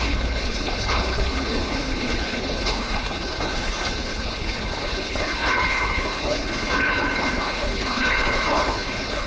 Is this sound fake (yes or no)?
yes